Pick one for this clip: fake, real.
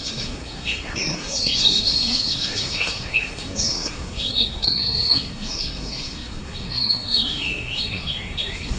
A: fake